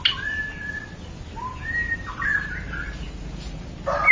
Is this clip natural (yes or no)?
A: yes